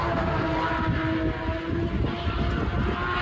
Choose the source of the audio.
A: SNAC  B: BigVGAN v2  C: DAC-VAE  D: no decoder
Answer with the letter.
D